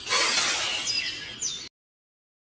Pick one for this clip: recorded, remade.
recorded